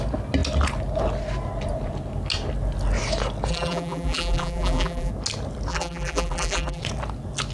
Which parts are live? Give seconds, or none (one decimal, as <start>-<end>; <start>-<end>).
0.0-3.5; 5.1-5.7; 6.8-7.5